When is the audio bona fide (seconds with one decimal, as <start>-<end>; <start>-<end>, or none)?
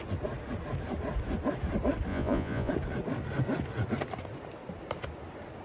0.0-2.1; 2.7-5.6